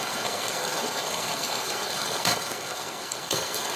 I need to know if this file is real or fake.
fake